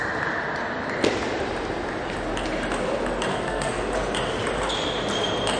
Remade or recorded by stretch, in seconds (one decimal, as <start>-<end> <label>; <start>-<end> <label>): 0.0-3.3 recorded; 3.3-3.8 remade; 3.8-5.6 recorded